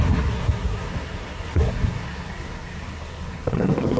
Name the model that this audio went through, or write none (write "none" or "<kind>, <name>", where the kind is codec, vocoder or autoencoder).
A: codec, SNAC